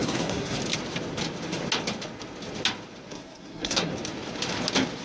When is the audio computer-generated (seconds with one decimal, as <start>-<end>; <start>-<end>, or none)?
0.0-0.6; 3.1-3.9